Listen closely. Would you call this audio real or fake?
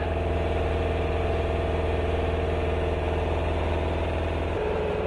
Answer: fake